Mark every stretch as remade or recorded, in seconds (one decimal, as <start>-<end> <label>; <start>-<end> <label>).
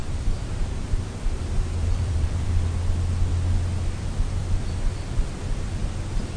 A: 0.0-1.4 remade; 1.4-1.8 recorded; 1.8-2.5 remade; 2.5-6.4 recorded